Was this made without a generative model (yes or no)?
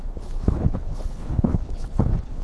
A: no